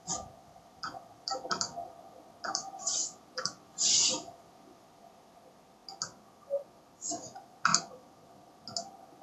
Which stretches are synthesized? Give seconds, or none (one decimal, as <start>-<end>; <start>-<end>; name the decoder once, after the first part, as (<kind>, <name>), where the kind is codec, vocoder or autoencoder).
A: 0.4-4.5 (vocoder, BigVGAN v2); 7.7-8.5

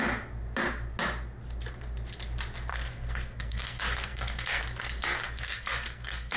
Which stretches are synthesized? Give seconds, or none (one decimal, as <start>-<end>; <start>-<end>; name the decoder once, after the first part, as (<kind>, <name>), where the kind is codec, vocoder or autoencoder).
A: 2.7-4.6 (codec, SNAC); 5.2-6.4

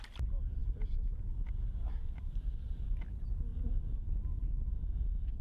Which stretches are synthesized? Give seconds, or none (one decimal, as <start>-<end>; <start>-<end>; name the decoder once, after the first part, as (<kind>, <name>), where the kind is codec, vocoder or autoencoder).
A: none

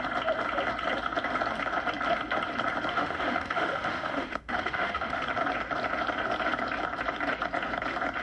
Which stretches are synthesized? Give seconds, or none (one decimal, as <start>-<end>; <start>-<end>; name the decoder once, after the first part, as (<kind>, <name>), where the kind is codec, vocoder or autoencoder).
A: 2.9-5.2 (autoencoder, DAC-VAE)

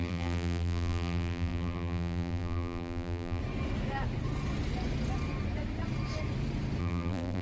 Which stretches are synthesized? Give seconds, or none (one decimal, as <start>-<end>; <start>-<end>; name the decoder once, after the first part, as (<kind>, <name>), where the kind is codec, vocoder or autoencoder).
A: 0.0-3.4 (vocoder, BigVGAN v2); 6.8-7.4

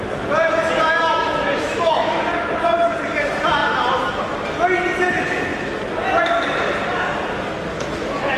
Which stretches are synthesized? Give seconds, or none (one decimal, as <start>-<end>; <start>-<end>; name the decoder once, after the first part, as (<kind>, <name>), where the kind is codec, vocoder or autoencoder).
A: 1.0-2.5 (autoencoder, DAC-VAE)